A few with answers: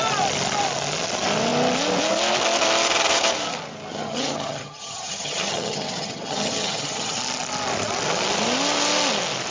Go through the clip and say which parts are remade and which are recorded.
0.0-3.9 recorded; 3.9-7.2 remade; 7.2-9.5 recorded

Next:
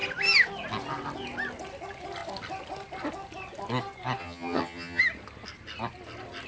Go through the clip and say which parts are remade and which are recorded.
0.0-4.2 recorded; 4.2-5.0 remade; 5.0-6.5 recorded

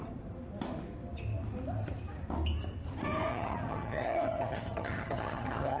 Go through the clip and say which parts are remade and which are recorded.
0.0-3.3 recorded; 3.3-5.8 remade

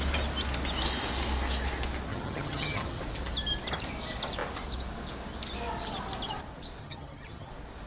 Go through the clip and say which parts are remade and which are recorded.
0.0-2.1 recorded; 2.1-3.0 remade; 3.0-6.8 recorded; 6.8-7.5 remade; 7.5-7.9 recorded

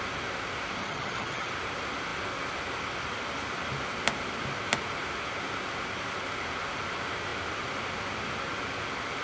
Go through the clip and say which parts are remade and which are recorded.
0.0-0.8 recorded; 0.8-1.5 remade; 1.5-9.2 recorded

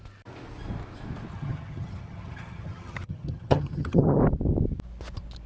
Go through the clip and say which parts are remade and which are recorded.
0.0-1.3 recorded; 1.3-4.2 remade; 4.2-5.5 recorded